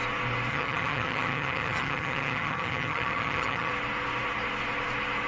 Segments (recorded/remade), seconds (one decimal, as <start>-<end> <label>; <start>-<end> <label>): 0.0-0.5 recorded; 0.5-3.7 remade; 3.7-5.3 recorded